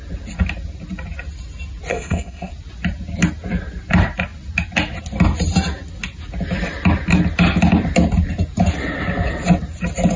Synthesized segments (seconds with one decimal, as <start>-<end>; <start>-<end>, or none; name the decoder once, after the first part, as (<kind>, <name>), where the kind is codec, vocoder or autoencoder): 1.9-2.5 (codec, SNAC)